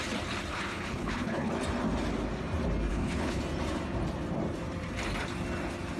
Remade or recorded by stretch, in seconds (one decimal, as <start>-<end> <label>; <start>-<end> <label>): 0.0-0.5 recorded; 0.5-1.5 remade; 1.5-2.9 recorded; 2.9-3.4 remade; 3.4-6.0 recorded